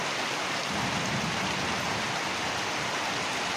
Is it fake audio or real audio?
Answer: real